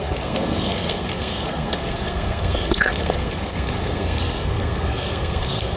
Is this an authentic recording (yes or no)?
no